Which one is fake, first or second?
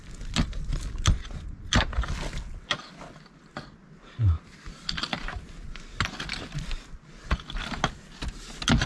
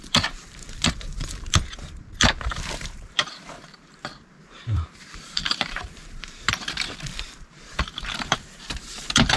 second